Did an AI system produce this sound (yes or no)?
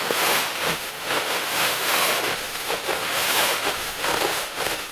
yes